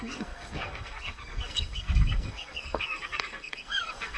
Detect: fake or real fake